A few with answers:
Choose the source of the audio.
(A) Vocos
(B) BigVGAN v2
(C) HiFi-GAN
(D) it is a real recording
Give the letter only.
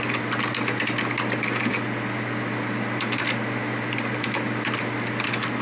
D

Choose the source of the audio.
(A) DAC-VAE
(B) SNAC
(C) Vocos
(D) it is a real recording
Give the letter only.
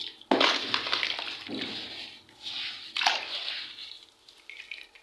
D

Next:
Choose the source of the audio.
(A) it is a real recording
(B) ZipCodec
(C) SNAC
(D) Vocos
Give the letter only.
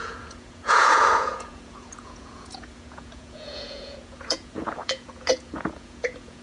D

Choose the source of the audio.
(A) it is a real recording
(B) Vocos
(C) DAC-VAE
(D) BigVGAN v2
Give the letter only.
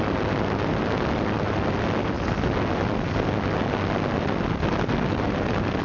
A